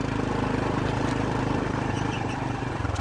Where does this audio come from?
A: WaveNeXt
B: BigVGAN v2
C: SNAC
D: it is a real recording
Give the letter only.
B